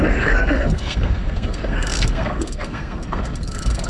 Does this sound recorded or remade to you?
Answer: remade